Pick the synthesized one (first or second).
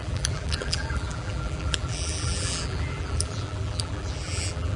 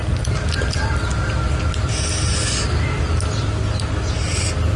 first